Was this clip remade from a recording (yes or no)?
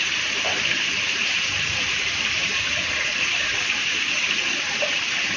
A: yes